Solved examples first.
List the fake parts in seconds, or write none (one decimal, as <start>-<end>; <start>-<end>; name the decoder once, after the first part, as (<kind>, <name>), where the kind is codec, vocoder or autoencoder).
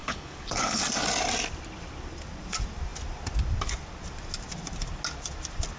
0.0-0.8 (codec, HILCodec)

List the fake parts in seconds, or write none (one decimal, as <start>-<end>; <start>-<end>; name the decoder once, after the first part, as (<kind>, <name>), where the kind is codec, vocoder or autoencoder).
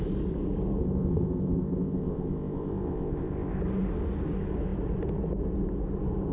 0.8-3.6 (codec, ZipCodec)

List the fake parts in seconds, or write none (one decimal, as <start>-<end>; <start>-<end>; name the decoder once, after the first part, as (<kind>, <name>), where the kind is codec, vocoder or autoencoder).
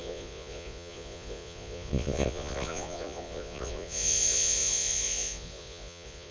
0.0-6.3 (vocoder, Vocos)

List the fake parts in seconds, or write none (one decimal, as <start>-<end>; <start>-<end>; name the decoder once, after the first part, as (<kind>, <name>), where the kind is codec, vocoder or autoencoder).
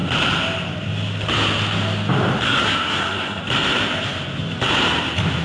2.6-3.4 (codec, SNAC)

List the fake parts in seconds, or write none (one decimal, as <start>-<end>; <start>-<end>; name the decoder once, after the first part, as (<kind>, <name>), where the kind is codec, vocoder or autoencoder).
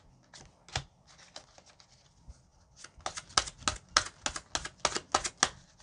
none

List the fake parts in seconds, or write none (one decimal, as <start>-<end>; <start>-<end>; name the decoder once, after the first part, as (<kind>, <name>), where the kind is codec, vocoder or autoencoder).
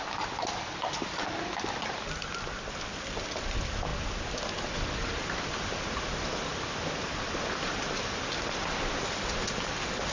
none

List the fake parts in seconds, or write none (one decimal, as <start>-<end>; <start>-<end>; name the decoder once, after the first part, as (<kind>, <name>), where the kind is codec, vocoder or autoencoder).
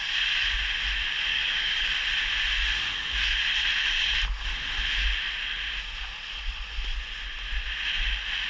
1.3-1.9 (codec, DAC)